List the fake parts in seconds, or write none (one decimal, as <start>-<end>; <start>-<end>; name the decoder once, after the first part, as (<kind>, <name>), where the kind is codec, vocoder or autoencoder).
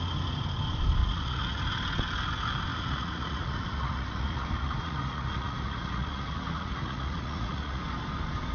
1.0-1.6 (vocoder, Vocos); 2.7-7.8